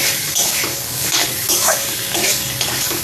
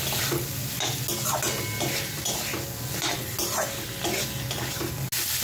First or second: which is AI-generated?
first